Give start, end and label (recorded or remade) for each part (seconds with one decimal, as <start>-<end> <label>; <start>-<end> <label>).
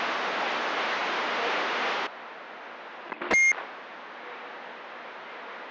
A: 0.0-5.7 recorded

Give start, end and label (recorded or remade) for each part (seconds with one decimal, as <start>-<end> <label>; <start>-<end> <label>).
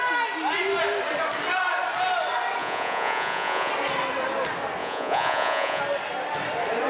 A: 0.0-2.6 recorded; 2.6-3.7 remade; 3.7-4.8 recorded; 4.8-5.8 remade; 5.8-6.9 recorded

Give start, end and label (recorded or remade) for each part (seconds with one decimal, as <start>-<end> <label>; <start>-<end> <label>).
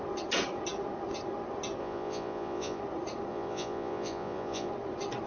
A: 0.0-1.8 recorded; 1.8-2.8 remade; 2.8-3.3 recorded; 3.3-4.7 remade; 4.7-5.3 recorded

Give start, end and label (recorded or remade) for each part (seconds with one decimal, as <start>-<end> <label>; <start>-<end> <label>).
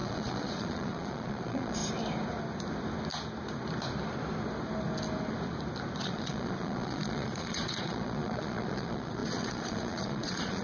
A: 0.0-1.8 remade; 1.8-6.0 recorded; 6.0-10.6 remade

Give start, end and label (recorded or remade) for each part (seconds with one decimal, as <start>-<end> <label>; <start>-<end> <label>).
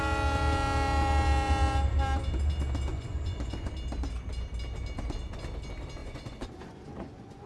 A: 0.0-2.9 recorded; 2.9-3.7 remade; 3.7-6.0 recorded; 6.0-7.5 remade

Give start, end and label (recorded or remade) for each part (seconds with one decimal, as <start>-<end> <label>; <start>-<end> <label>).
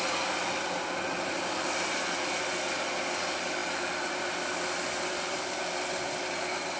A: 0.0-6.8 recorded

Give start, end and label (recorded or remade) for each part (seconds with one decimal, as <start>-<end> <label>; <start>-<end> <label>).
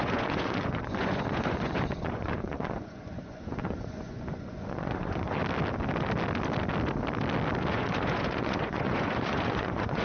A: 0.0-5.4 remade; 5.4-7.7 recorded; 7.7-10.0 remade